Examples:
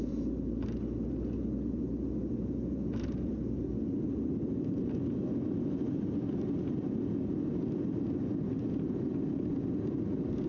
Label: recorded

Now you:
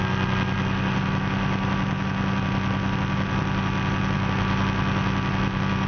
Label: recorded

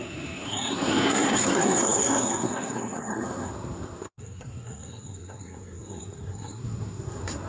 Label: remade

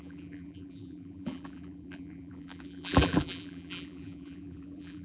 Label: remade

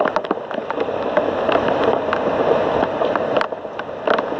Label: recorded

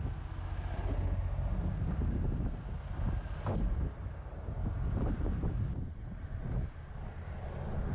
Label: recorded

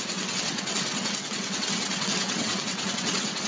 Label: remade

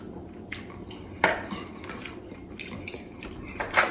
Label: recorded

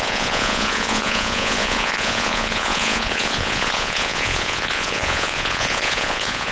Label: remade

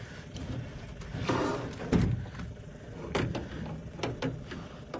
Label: recorded